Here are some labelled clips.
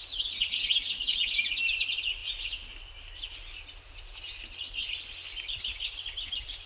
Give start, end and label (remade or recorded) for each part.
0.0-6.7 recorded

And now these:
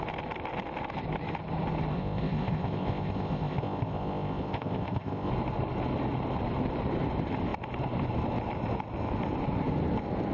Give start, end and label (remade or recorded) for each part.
0.0-1.9 recorded; 1.9-5.3 remade; 5.3-10.3 recorded